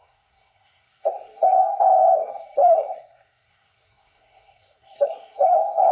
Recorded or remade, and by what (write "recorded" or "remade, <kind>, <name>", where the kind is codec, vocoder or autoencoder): remade, codec, SNAC